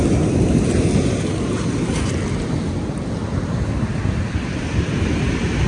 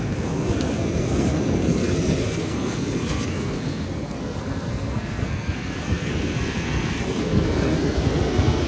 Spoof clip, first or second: second